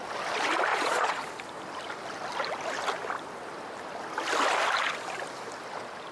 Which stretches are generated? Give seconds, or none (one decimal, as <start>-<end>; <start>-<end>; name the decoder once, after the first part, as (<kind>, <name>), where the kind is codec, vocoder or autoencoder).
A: 0.7-1.3 (vocoder, Vocos)